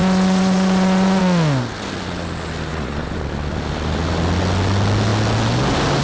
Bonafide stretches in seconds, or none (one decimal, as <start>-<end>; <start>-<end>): 1.2-2.7; 3.2-6.0